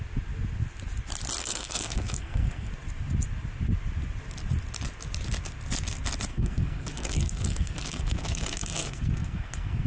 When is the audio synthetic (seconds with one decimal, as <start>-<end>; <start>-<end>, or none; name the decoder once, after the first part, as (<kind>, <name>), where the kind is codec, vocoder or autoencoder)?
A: 1.4-2.7 (codec, SNAC); 6.3-9.9

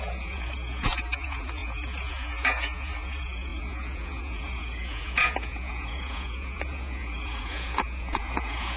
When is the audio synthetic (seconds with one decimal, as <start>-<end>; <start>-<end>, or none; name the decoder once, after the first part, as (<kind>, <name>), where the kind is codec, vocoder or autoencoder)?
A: 0.0-8.8 (vocoder, Vocos)

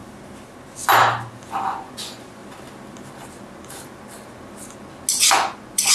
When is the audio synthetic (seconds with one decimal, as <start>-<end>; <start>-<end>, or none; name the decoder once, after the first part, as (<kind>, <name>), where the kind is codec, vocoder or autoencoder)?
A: 1.6-2.4 (vocoder, Vocos); 5.3-5.9

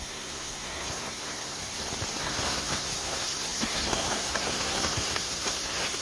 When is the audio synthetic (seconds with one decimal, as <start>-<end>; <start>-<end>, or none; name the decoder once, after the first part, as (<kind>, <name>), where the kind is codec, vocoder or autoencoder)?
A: 0.0-1.6 (codec, SNAC); 2.2-6.0

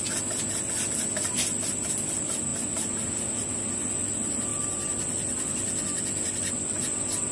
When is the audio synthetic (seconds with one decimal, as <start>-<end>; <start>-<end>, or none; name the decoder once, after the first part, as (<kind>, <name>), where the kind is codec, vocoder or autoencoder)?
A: none